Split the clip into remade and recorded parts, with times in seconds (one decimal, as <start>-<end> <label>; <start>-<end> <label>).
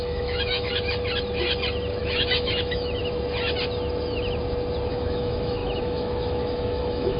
0.0-0.7 remade; 0.7-2.0 recorded; 2.0-3.0 remade; 3.0-4.9 recorded; 4.9-7.2 remade